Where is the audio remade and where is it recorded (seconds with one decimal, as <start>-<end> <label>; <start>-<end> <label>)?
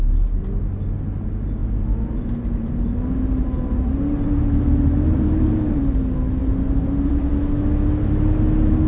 0.0-1.6 recorded; 1.6-5.8 remade; 5.8-6.4 recorded; 6.4-7.3 remade; 7.3-8.9 recorded